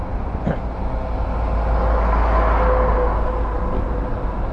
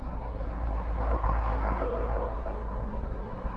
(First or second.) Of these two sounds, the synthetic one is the second